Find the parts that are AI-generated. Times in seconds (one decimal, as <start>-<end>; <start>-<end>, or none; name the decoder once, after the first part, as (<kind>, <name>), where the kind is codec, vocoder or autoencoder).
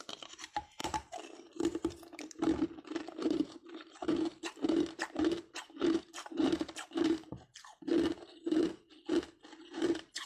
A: 0.0-7.5 (vocoder, BigVGAN v2); 8.0-8.9; 9.6-10.3